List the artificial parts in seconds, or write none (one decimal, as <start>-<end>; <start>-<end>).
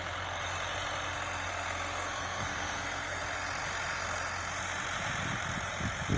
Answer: 1.5-3.2